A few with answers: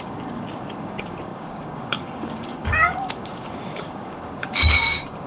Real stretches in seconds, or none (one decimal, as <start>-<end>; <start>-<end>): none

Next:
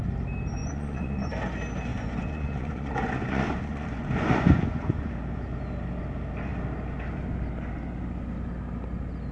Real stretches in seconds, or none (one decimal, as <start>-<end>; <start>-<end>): 0.0-0.6; 1.3-1.9; 5.1-9.3

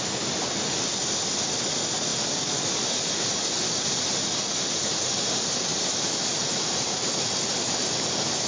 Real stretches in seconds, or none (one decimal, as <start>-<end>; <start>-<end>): 0.0-8.5

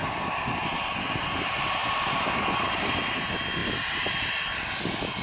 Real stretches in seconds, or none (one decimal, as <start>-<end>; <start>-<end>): 0.0-1.8; 3.2-3.6; 4.3-5.2

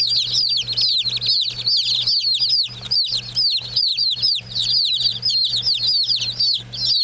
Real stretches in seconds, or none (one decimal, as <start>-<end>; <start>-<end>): 0.0-3.9; 5.3-7.0